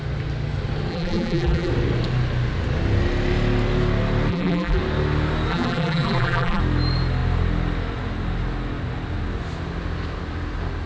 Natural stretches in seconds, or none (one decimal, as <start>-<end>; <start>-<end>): 0.0-0.9; 1.7-4.3; 4.8-5.5; 6.6-10.9